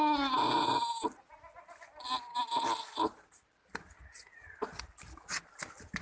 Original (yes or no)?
yes